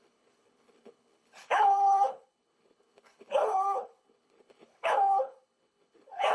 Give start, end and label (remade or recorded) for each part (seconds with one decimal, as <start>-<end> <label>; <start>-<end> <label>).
0.0-6.3 remade